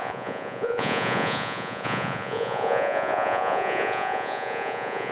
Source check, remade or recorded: remade